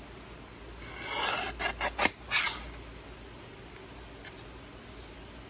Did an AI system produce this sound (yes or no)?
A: no